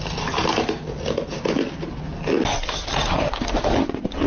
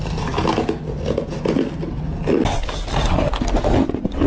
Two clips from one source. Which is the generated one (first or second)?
first